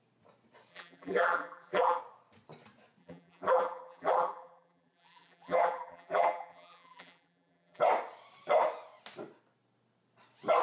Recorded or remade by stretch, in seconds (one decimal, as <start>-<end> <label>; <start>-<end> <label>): 0.0-0.7 recorded; 0.7-2.0 remade; 2.0-3.0 recorded; 3.0-7.8 remade; 7.8-10.6 recorded